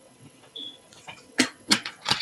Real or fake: fake